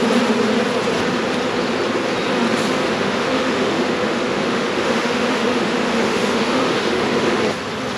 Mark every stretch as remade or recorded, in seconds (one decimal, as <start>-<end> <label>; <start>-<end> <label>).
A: 0.0-2.8 recorded; 2.8-7.4 remade; 7.4-8.0 recorded